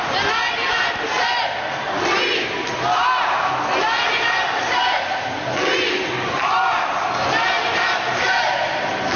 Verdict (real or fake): real